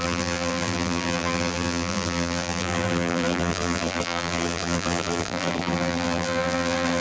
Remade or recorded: remade